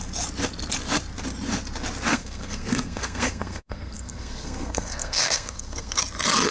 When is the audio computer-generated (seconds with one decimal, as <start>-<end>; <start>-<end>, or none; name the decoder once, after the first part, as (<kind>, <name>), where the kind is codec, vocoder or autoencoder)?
2.1-6.0 (codec, SNAC)